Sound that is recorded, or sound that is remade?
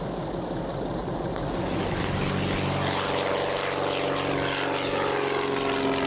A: recorded